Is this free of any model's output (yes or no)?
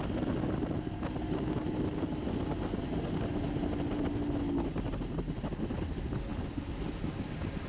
yes